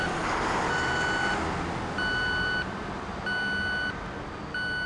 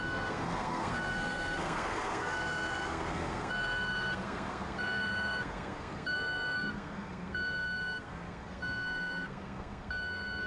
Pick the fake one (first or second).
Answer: second